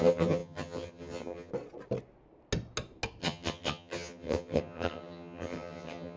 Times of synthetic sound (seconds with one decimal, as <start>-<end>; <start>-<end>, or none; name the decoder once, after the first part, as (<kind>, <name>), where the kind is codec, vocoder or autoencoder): 0.0-1.5 (vocoder, HiFi-GAN); 3.2-6.2